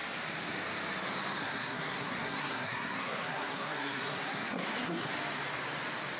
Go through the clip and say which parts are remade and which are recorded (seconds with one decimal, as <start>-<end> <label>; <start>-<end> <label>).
0.0-1.4 recorded; 1.4-5.1 remade; 5.1-6.2 recorded